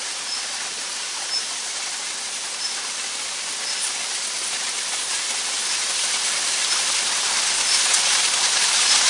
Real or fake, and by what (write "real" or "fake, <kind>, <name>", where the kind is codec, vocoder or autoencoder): real